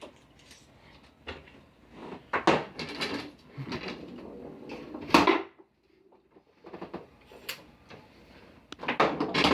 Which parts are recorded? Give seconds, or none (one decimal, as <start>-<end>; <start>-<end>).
0.0-9.5